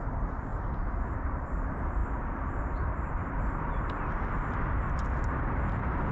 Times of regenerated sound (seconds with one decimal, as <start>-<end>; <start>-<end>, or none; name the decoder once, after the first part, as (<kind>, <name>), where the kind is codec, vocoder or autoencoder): none